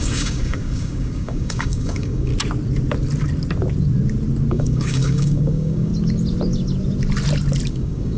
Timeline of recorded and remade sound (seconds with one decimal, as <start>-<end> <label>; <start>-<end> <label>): 0.0-2.3 remade; 2.3-4.5 recorded; 4.5-5.9 remade; 5.9-7.7 recorded; 7.7-8.2 remade